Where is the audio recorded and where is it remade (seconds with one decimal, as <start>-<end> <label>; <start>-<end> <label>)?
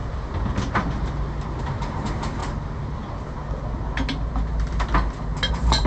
0.0-1.6 recorded; 1.6-2.4 remade; 2.4-5.5 recorded; 5.5-5.9 remade